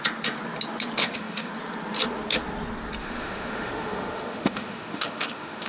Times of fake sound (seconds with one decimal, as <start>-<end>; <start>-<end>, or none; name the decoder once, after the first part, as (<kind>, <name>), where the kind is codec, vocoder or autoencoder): 1.0-1.5 (autoencoder, DAC-VAE); 3.0-5.7